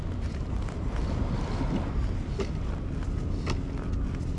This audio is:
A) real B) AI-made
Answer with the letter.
A